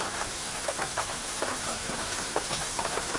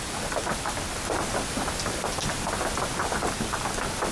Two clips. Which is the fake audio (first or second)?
first